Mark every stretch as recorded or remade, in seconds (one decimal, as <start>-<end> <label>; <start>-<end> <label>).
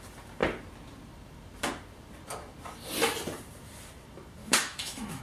0.0-4.4 recorded; 4.4-5.2 remade